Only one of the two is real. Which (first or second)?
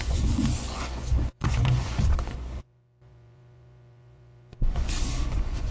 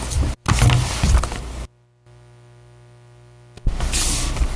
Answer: second